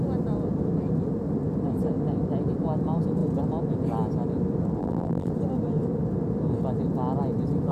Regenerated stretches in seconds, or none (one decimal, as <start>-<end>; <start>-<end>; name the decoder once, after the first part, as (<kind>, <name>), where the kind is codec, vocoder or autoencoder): 4.8-5.3 (vocoder, BigVGAN v2)